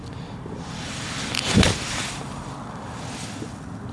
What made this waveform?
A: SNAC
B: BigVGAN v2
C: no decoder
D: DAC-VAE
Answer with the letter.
B